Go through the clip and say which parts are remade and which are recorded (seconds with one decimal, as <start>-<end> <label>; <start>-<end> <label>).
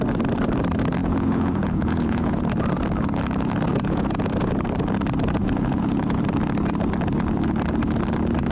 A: 0.0-1.0 recorded; 1.0-2.4 remade; 2.4-3.7 recorded; 3.7-4.5 remade; 4.5-5.4 recorded; 5.4-6.2 remade; 6.2-8.5 recorded